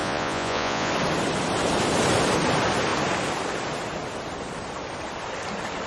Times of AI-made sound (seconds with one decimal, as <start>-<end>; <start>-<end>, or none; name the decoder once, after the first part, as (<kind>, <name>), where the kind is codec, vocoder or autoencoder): 0.0-0.9 (vocoder, Vocos)